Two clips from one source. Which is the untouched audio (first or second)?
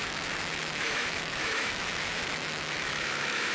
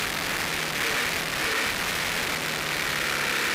second